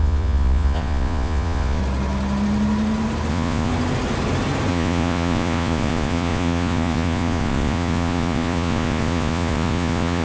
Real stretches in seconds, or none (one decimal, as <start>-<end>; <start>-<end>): 1.8-3.3; 3.7-4.7